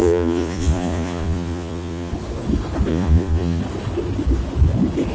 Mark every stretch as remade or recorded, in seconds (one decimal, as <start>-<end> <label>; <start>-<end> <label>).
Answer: 0.0-2.1 remade; 2.1-2.9 recorded; 2.9-3.6 remade; 3.6-5.1 recorded